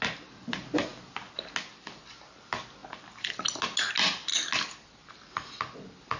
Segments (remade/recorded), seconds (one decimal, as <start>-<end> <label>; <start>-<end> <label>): 0.0-6.2 recorded